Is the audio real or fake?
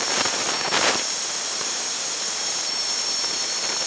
fake